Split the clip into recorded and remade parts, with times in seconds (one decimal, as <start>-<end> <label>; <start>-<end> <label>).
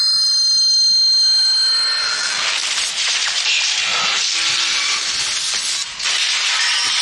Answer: 0.0-2.6 recorded; 2.6-3.4 remade; 3.4-3.9 recorded; 3.9-5.2 remade; 5.2-7.0 recorded